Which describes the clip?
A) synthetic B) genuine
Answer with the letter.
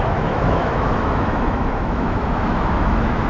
A